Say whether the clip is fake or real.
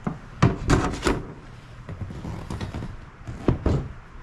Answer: real